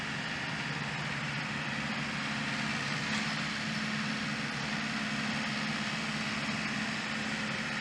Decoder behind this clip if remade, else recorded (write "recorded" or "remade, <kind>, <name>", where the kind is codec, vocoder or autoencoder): recorded